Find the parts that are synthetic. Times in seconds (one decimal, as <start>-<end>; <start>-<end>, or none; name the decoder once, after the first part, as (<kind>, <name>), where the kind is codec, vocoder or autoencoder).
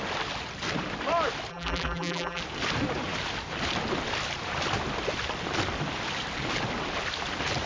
1.5-2.4 (vocoder, BigVGAN v2)